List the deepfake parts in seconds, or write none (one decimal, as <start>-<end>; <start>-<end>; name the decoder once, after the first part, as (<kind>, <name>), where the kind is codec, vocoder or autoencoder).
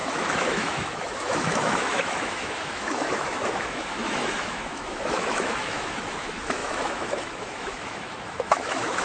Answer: 0.0-9.0 (autoencoder, DAC-VAE)